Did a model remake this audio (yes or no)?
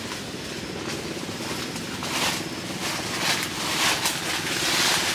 no